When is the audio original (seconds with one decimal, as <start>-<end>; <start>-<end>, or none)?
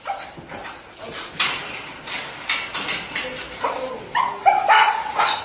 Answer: 0.0-5.4